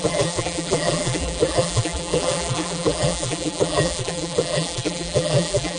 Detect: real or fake fake